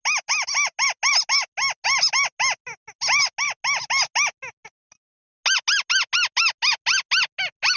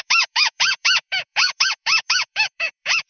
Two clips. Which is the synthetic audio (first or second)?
second